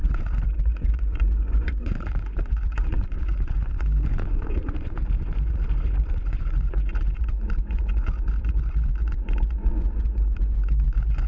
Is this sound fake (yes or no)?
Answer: yes